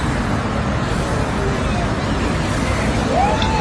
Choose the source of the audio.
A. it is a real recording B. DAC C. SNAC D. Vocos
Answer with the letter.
A